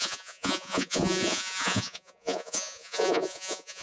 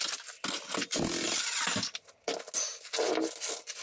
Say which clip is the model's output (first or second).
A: first